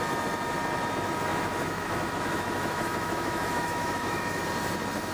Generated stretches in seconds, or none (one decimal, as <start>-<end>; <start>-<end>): 1.3-4.4